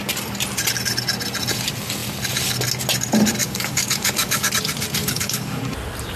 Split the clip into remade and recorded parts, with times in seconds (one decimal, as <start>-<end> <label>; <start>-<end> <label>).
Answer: 0.0-3.4 recorded; 3.4-4.5 remade; 4.5-5.0 recorded; 5.0-5.6 remade; 5.6-6.2 recorded